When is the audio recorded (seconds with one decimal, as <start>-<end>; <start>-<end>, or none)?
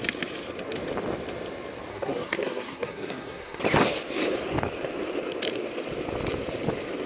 0.0-1.9; 3.6-7.1